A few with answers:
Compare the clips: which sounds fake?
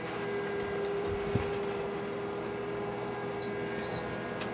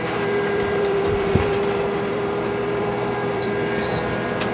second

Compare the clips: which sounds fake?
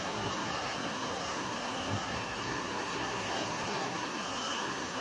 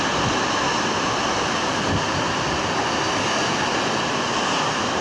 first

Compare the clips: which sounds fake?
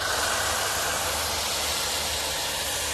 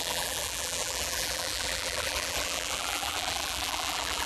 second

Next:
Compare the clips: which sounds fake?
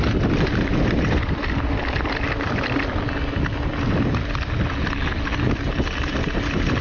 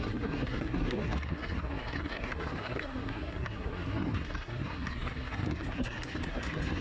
second